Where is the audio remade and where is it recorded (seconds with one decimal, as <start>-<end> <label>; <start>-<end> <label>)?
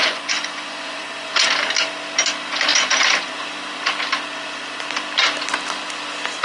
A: 0.0-1.3 remade; 1.3-6.4 recorded